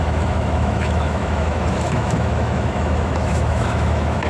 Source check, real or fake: fake